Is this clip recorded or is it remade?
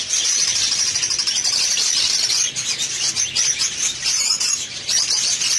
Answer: recorded